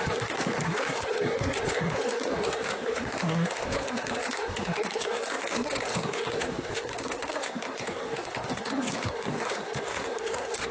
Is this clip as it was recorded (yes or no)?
no